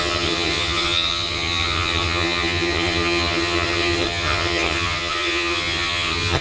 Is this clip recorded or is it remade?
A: remade